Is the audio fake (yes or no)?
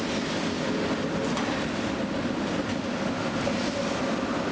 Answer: no